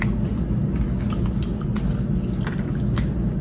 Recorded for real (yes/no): yes